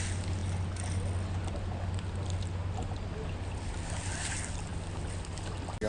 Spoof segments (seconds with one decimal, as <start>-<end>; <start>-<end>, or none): none